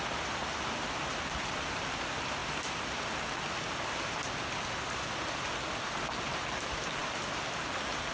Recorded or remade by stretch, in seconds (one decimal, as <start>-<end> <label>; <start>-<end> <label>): 0.0-8.1 recorded